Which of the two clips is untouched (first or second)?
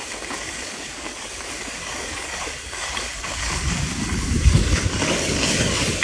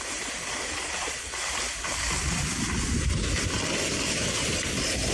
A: second